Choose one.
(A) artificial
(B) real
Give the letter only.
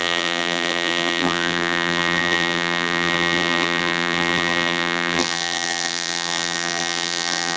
A